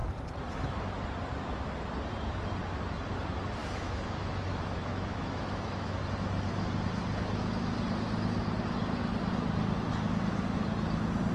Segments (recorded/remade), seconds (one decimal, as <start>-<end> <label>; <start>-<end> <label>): 0.0-3.6 recorded; 3.6-6.0 remade; 6.0-11.3 recorded